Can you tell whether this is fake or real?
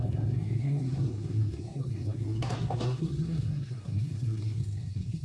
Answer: fake